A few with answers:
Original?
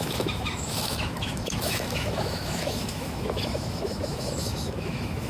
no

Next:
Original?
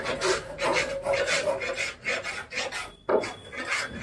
yes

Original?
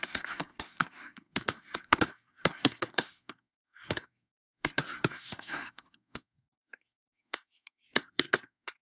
no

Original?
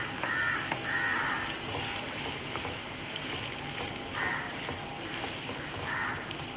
yes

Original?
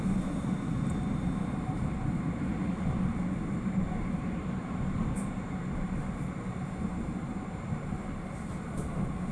no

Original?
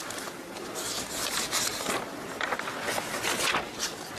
yes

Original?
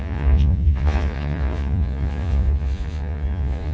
no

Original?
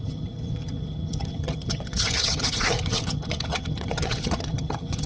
no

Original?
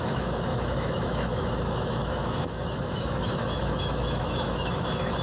no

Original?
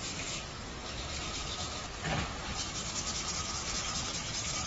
yes